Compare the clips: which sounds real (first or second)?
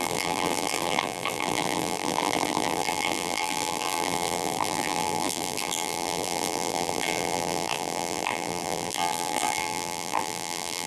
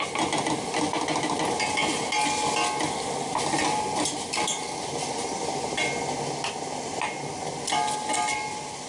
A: second